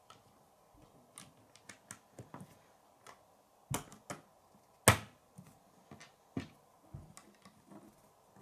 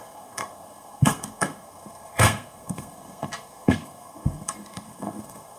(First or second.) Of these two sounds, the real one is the first